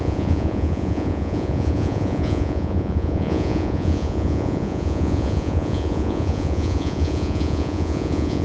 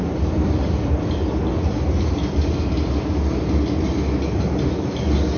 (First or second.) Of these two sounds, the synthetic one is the first